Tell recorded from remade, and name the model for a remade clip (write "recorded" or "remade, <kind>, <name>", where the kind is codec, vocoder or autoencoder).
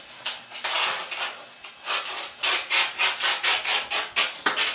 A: recorded